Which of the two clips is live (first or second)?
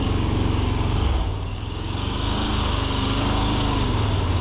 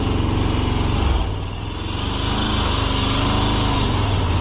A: second